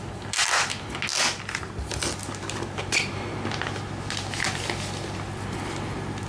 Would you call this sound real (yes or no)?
yes